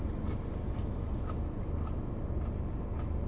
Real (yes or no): yes